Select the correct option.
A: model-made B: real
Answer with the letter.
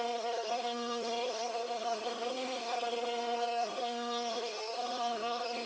A